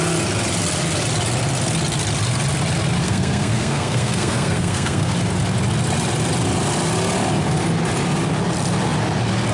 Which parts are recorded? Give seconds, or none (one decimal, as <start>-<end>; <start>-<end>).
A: 0.0-3.0; 5.1-9.5